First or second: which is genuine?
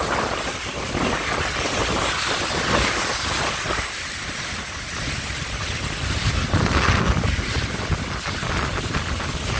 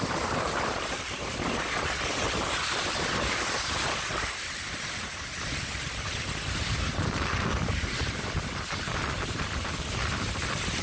first